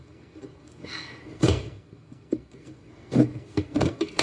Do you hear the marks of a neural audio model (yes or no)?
yes